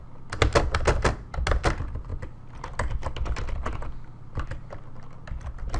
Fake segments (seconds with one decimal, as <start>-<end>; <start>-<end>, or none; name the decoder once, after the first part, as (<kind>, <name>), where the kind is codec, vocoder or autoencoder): none